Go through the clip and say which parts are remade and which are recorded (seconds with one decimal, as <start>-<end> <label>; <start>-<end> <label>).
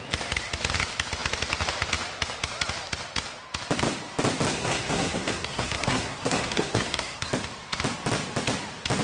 0.0-4.5 recorded; 4.5-7.3 remade; 7.3-9.0 recorded